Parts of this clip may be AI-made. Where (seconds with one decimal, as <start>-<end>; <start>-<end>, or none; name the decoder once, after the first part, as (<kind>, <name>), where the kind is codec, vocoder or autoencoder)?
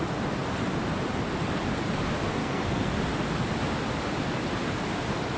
2.4-2.9 (codec, SNAC)